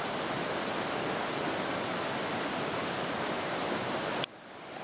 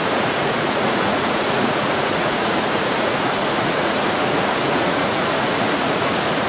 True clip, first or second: first